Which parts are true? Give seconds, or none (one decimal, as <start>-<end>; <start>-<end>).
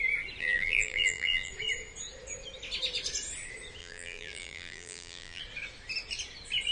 0.0-0.4; 1.5-3.8; 5.4-6.7